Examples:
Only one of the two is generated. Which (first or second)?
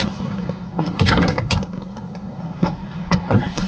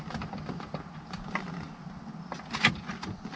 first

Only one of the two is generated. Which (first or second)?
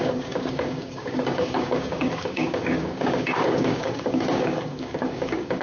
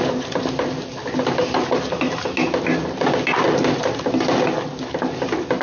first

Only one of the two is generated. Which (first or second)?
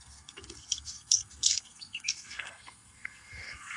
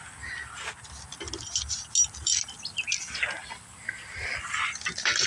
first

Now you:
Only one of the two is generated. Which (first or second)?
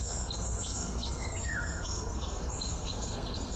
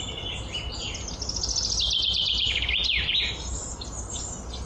first